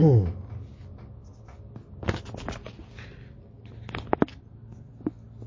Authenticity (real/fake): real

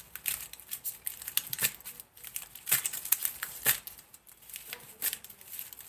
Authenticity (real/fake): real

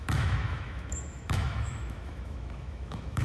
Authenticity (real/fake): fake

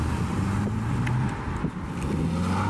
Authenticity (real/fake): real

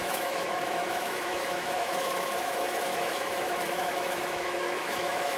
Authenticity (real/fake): fake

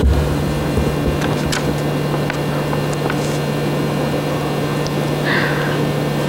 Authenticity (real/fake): real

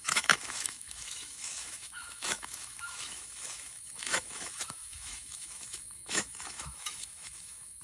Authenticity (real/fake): fake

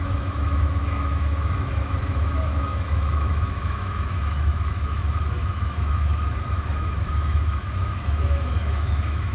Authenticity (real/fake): fake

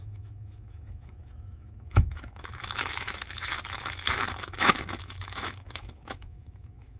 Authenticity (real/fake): fake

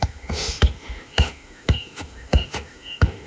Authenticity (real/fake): fake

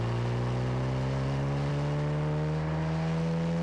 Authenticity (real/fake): real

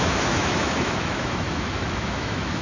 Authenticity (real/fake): fake